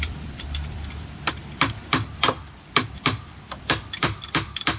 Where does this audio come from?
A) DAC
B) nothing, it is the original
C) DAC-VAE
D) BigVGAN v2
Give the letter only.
D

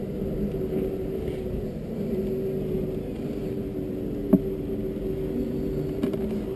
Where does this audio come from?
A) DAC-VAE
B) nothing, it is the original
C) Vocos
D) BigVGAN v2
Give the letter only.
B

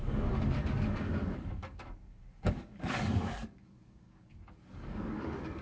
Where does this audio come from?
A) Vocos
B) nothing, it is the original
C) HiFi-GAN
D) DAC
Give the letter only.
D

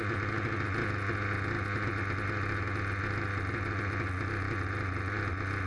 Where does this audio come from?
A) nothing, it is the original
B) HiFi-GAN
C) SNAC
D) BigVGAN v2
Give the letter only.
A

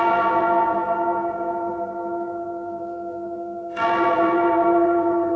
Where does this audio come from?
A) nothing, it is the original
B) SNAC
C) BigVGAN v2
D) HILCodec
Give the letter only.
C